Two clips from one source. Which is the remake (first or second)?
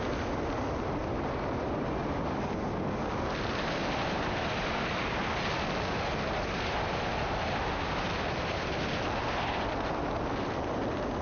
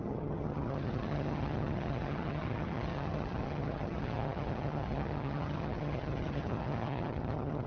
second